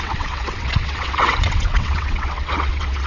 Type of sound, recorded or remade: remade